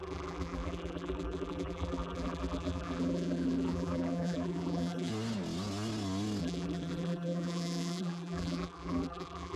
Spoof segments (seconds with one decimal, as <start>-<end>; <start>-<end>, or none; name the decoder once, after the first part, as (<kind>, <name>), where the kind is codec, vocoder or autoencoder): 0.0-5.1 (vocoder, BigVGAN v2); 6.4-9.6